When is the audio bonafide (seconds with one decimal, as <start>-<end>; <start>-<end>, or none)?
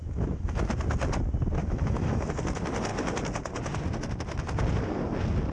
0.7-1.6; 2.3-5.5